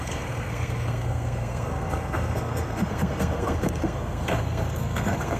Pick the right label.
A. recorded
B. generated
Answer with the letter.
B